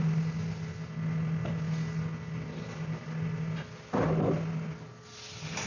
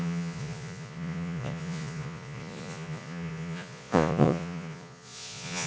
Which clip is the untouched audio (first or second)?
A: first